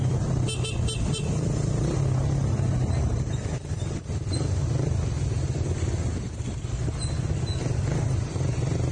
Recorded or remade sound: recorded